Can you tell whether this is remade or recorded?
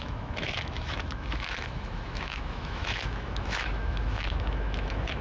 remade